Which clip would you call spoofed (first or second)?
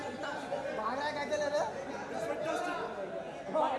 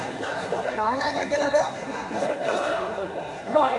second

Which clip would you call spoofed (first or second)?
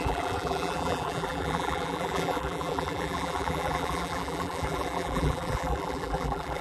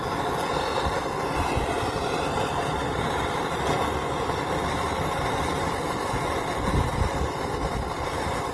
first